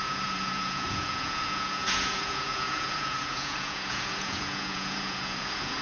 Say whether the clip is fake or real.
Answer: fake